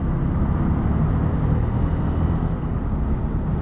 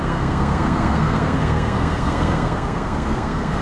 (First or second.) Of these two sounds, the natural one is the first